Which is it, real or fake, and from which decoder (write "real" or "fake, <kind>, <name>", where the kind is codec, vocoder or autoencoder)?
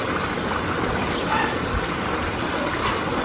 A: real